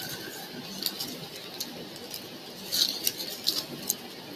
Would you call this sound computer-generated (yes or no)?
no